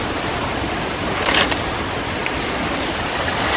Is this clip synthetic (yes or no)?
no